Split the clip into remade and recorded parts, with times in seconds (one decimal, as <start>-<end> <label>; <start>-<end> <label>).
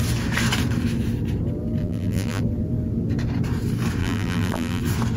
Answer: 0.0-1.8 recorded; 1.8-2.4 remade; 2.4-4.0 recorded; 4.0-4.8 remade; 4.8-5.2 recorded